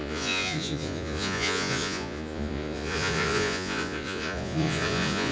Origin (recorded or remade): remade